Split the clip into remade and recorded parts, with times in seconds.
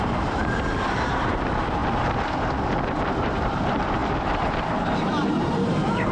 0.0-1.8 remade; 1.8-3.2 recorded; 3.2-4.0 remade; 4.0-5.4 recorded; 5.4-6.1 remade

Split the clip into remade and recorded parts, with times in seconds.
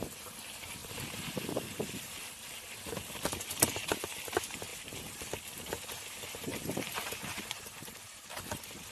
0.0-0.8 recorded; 0.8-4.2 remade; 4.2-4.7 recorded; 4.7-5.8 remade; 5.8-6.5 recorded; 6.5-7.4 remade; 7.4-8.9 recorded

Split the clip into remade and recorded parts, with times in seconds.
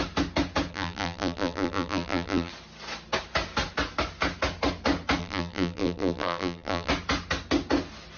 0.0-0.7 recorded; 0.7-2.5 remade; 2.5-5.2 recorded; 5.2-6.9 remade; 6.9-8.2 recorded